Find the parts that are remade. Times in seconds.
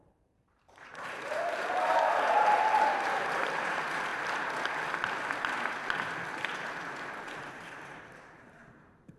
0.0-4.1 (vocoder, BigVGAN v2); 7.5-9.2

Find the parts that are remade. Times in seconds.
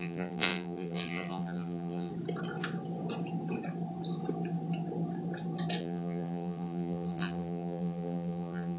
0.0-2.1 (vocoder, BigVGAN v2); 5.8-8.8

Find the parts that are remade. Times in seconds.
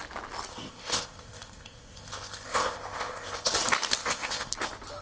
0.5-3.5 (codec, ZipCodec); 4.0-4.5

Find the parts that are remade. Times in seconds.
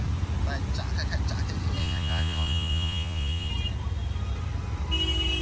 1.8-3.5 (vocoder, Vocos)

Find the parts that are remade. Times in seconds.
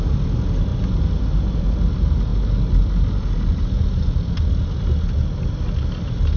none